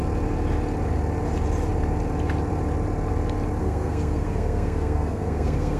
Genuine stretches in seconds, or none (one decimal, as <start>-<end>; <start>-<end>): 0.0-3.6